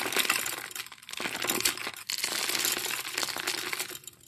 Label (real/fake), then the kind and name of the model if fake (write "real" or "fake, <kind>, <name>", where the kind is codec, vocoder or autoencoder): real